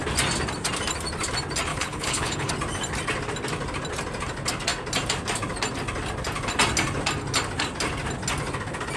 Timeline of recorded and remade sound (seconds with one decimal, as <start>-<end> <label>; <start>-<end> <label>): 0.0-1.7 recorded; 1.7-2.5 remade; 2.5-9.0 recorded